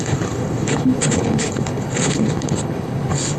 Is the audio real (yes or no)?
no